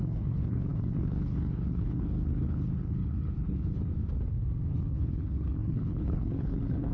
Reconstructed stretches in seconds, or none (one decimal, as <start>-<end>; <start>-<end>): 0.0-3.9; 4.7-6.9